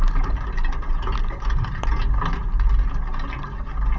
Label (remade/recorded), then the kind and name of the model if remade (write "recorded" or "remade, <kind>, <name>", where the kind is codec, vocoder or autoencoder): recorded